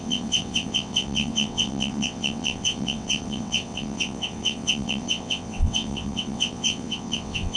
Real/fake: fake